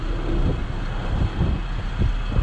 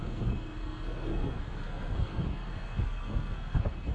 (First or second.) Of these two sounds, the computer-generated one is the second